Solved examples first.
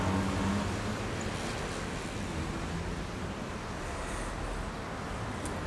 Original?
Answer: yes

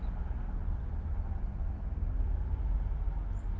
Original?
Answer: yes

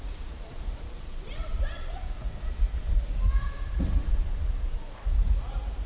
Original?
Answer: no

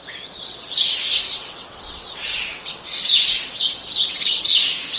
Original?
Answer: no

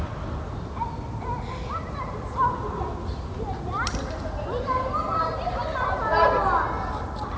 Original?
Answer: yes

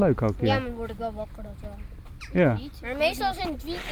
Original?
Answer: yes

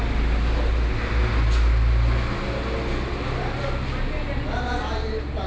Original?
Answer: yes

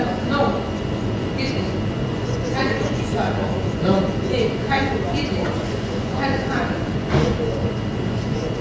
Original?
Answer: no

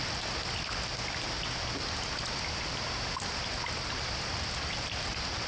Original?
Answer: yes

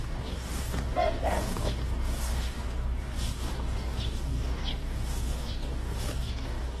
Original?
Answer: no